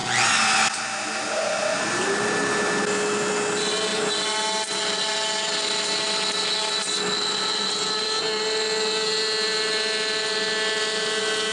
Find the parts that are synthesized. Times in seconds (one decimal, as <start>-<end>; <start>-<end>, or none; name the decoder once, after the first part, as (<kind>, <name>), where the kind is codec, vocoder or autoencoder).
none